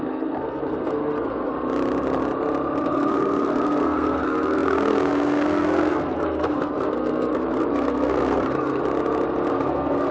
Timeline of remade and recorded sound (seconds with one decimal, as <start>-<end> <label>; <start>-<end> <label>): 0.0-1.5 remade; 1.5-2.8 recorded; 2.8-8.8 remade; 8.8-9.5 recorded; 9.5-10.1 remade